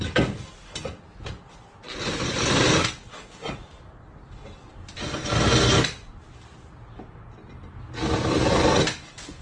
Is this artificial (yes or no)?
no